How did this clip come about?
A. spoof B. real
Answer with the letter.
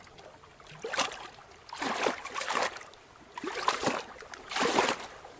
B